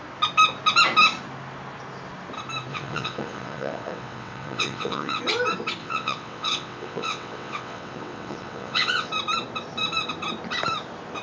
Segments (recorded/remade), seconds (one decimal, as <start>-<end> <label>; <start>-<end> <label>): 0.0-2.7 recorded; 2.7-5.2 remade; 5.2-5.8 recorded; 5.8-9.1 remade; 9.1-11.2 recorded